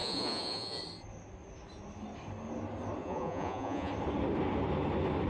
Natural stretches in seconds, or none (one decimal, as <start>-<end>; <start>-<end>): 0.8-3.0; 3.9-5.3